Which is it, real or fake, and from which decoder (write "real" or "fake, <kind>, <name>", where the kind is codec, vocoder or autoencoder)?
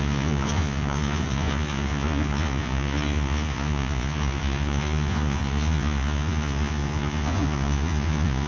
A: fake, vocoder, Vocos